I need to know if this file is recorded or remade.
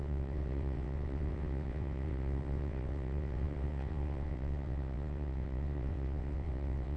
remade